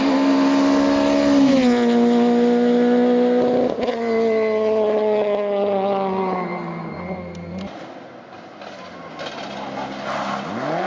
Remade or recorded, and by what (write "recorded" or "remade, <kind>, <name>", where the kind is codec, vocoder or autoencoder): recorded